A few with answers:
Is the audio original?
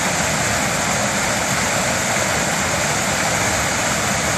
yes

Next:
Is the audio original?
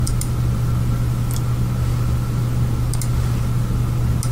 yes